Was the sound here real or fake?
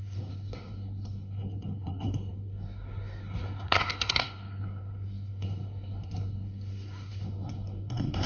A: fake